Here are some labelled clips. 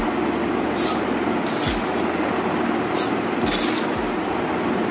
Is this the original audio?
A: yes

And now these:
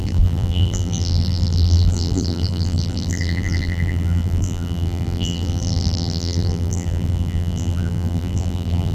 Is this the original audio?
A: no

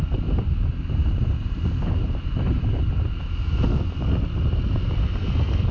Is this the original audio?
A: yes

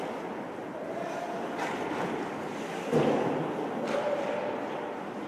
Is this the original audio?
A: yes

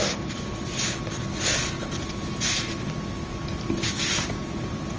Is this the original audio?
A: yes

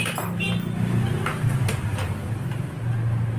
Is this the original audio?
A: yes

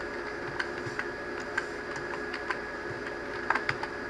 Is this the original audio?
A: yes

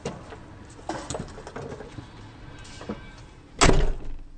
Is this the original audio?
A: yes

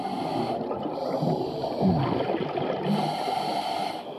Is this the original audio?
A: yes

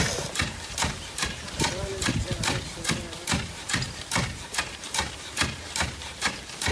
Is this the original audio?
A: yes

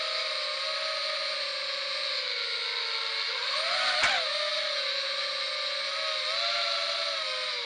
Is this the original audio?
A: yes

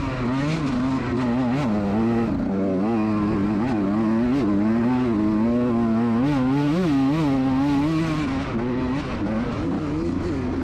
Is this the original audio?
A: yes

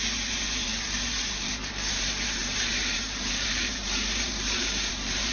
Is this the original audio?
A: no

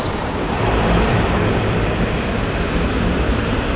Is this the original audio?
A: no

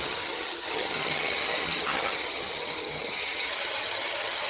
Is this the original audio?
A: no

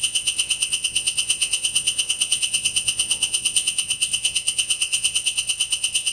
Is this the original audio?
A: no